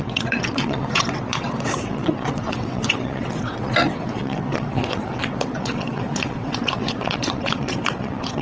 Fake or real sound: fake